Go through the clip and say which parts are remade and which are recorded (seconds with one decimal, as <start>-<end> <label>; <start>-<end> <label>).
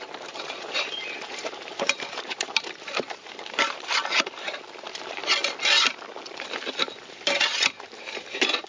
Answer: 0.0-5.2 remade; 5.2-7.1 recorded; 7.1-8.7 remade